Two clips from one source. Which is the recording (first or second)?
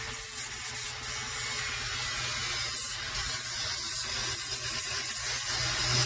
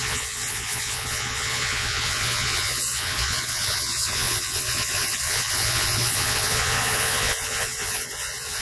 first